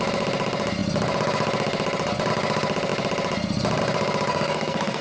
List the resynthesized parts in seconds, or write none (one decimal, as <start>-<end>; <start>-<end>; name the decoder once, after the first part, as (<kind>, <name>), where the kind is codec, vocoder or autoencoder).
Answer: 4.3-5.0 (codec, SNAC)